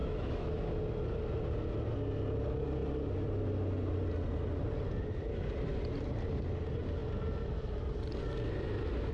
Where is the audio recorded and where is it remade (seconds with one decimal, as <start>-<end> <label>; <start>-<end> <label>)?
0.0-0.6 remade; 0.6-9.1 recorded